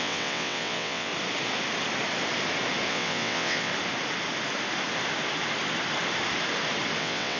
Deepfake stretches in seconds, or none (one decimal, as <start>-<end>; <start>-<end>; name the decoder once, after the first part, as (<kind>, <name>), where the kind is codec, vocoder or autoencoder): 0.0-1.1 (vocoder, WaveNeXt); 2.9-3.7; 7.0-7.4